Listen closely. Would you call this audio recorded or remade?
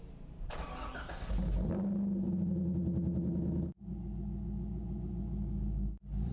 recorded